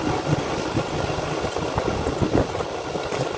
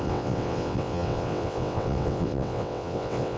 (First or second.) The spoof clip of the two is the second